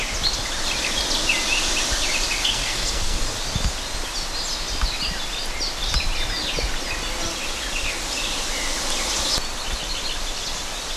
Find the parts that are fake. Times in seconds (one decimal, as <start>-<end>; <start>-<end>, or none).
2.4-3.2